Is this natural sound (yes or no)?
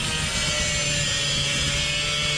yes